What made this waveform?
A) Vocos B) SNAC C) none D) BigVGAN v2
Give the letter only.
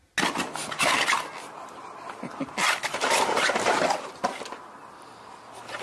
C